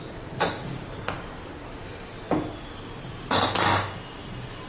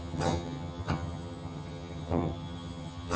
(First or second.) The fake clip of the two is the second